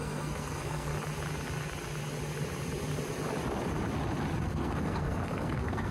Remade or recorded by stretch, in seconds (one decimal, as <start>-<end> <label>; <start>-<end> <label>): 0.0-0.9 remade; 0.9-4.4 recorded; 4.4-5.9 remade

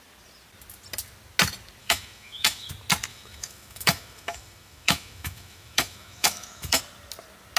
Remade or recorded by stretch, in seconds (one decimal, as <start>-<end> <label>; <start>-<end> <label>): 0.0-1.8 recorded; 1.8-2.7 remade; 2.7-3.1 recorded; 3.1-6.8 remade; 6.8-7.6 recorded

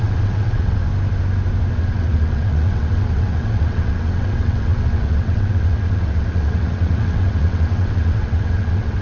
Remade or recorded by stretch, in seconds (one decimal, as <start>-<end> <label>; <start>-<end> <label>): 0.0-0.8 remade; 0.8-1.7 recorded; 1.7-9.0 remade

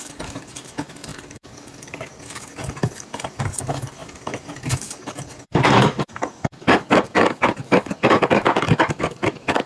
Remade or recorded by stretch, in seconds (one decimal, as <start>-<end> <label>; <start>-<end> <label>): 0.0-9.7 remade

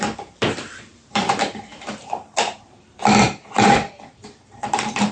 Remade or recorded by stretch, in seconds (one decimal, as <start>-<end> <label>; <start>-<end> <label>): 0.0-5.1 remade

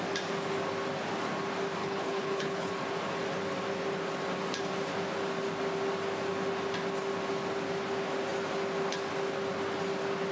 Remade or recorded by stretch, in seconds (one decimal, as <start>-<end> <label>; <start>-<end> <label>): 0.0-1.8 recorded; 1.8-2.7 remade; 2.7-10.3 recorded

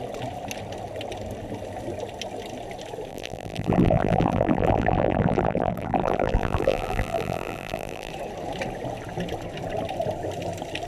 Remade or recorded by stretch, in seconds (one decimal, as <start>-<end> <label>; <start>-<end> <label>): 0.0-3.1 recorded; 3.1-8.1 remade; 8.1-10.9 recorded